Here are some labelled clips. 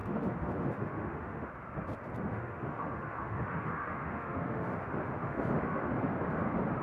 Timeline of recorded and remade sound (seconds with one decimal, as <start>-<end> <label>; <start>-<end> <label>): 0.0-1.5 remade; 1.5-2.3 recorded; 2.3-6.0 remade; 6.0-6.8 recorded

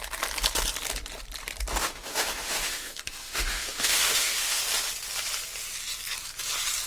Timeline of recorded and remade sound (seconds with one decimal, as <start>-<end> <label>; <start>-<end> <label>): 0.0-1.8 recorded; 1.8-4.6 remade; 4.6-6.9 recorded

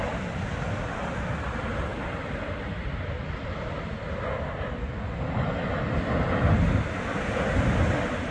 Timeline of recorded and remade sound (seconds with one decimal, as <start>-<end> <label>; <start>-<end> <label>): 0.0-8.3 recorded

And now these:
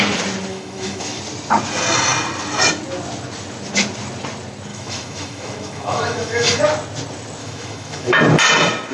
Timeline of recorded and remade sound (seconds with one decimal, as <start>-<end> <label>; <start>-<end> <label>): 0.0-0.5 recorded; 0.5-1.2 remade; 1.2-4.7 recorded; 4.7-6.6 remade; 6.6-7.4 recorded; 7.4-8.2 remade; 8.2-8.9 recorded

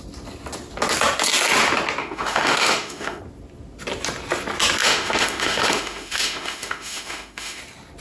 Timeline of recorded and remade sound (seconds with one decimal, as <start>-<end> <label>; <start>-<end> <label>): 0.0-2.0 recorded; 2.0-3.2 remade; 3.2-4.8 recorded; 4.8-7.6 remade; 7.6-8.0 recorded